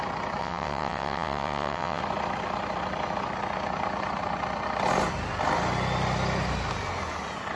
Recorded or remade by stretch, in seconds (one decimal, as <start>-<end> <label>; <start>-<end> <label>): 0.0-0.4 recorded; 0.4-2.0 remade; 2.0-7.6 recorded